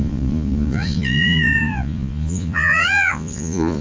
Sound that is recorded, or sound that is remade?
remade